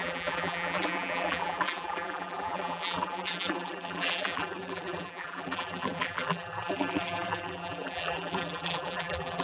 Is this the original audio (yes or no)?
no